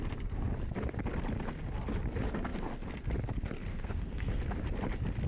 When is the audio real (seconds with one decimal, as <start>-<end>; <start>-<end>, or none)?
0.0-3.7; 4.4-5.3